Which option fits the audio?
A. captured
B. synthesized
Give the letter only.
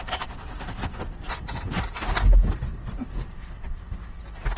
A